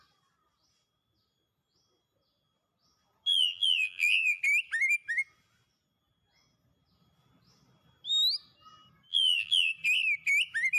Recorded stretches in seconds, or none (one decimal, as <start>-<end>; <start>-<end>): 0.0-3.3; 4.4-9.1; 9.7-10.8

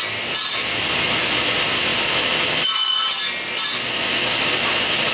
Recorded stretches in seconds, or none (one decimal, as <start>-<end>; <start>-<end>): 0.0-5.1

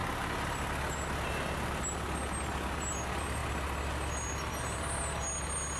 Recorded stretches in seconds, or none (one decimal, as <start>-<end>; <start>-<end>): 0.0-5.8

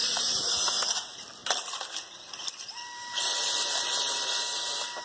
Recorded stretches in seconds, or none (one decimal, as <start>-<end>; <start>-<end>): 0.7-1.4; 4.4-5.0

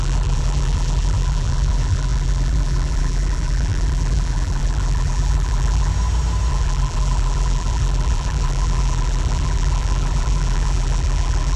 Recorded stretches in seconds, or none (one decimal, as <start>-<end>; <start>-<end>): 5.9-6.5

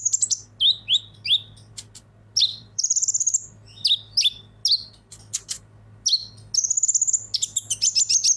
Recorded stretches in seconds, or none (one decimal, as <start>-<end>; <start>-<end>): 0.0-2.5; 3.5-8.4

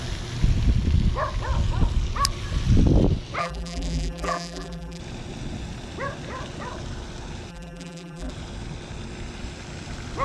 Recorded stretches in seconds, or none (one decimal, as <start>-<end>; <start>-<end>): 0.0-3.4; 5.0-7.5; 8.3-10.2

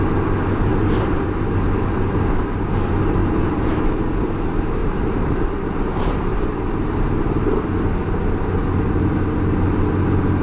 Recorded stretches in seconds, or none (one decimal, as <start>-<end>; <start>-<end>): 0.0-0.7; 1.4-3.2; 3.8-4.8; 7.6-10.4